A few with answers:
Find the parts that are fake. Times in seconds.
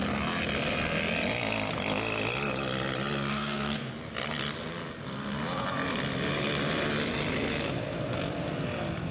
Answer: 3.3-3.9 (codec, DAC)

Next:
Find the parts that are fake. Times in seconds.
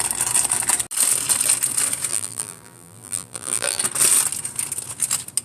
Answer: 2.1-3.8 (vocoder, BigVGAN v2)